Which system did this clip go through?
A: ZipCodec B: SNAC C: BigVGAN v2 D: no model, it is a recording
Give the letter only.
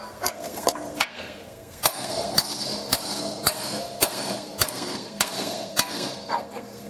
B